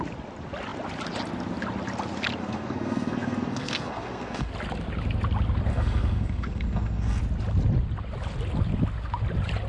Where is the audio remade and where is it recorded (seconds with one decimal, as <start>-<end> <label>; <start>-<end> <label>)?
0.0-2.4 recorded; 2.4-4.5 remade; 4.5-5.7 recorded; 5.7-7.2 remade; 7.2-9.7 recorded